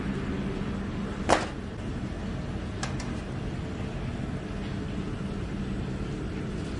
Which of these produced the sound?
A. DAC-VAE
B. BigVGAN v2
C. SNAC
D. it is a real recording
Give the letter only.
D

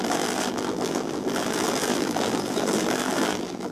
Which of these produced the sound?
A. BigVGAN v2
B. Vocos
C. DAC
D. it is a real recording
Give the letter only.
A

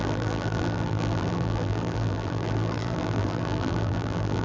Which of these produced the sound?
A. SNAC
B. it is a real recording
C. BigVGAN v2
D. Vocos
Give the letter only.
C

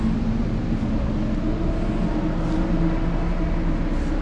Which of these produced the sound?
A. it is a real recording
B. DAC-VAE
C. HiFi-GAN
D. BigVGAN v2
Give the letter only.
A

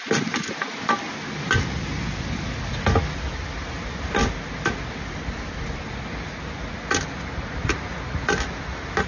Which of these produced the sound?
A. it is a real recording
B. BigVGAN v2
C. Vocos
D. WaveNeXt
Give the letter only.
A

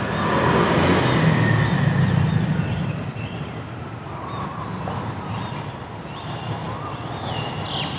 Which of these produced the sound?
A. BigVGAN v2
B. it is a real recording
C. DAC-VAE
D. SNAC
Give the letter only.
B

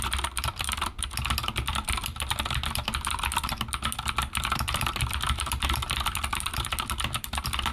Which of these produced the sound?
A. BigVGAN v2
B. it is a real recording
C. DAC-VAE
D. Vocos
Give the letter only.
A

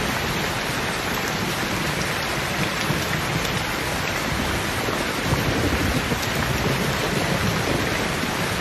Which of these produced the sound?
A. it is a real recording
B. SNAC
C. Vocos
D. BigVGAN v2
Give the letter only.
D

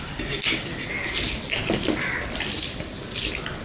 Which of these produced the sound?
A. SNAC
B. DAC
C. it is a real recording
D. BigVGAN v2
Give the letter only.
D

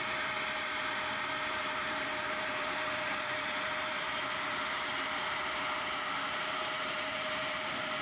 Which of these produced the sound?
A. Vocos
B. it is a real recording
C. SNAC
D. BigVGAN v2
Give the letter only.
D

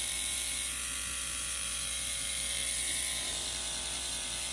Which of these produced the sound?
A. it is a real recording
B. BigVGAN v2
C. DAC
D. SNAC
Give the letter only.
B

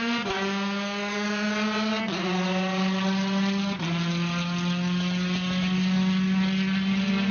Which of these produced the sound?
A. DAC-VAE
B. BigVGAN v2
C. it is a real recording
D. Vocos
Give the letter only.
C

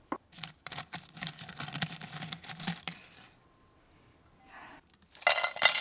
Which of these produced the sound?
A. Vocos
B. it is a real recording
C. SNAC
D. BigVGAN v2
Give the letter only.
B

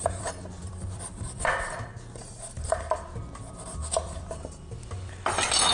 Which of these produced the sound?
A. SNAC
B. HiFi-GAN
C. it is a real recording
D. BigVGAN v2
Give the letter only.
D